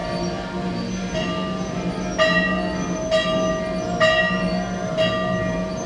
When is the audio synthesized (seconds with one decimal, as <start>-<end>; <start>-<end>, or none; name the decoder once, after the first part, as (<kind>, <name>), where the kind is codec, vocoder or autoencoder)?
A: none

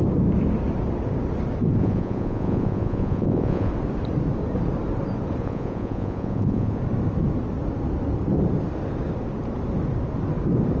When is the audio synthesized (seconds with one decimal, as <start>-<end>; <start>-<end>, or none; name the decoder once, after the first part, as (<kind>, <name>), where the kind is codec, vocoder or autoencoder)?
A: 1.8-3.7 (vocoder, Vocos); 5.4-6.8

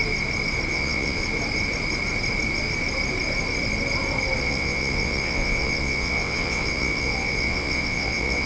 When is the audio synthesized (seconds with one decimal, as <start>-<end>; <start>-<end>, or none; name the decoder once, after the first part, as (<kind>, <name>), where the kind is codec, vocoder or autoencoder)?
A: 0.7-1.2 (vocoder, WaveNeXt); 4.4-8.5

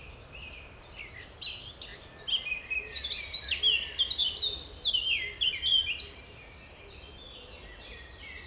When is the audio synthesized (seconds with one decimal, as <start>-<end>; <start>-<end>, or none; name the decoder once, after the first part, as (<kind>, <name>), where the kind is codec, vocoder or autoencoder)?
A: none

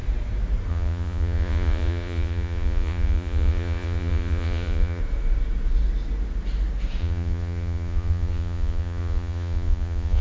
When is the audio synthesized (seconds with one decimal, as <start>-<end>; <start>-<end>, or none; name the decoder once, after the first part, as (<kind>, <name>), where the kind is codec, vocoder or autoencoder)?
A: 0.7-5.0 (vocoder, Vocos); 7.0-10.2

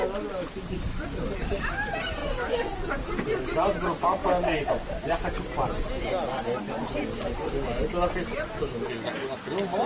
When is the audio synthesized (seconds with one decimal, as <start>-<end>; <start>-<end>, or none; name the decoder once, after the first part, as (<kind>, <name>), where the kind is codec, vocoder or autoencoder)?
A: none

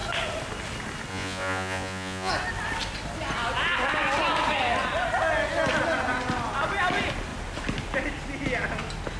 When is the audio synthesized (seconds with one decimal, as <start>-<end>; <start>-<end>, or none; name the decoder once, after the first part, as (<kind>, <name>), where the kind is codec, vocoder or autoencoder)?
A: 1.1-2.3 (vocoder, Vocos)

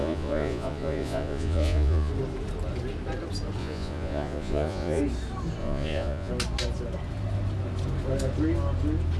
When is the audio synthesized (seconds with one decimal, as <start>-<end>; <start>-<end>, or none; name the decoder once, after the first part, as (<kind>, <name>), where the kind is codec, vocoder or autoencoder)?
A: 0.0-2.1 (vocoder, Vocos); 3.6-5.0; 5.6-6.3